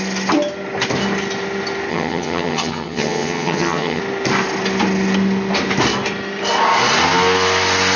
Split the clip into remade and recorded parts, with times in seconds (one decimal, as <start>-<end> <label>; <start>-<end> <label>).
0.0-1.9 recorded; 1.9-4.0 remade; 4.0-8.0 recorded